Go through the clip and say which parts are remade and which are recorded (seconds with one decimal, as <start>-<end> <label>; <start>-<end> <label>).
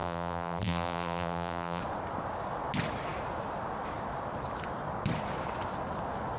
0.0-1.8 remade; 1.8-6.4 recorded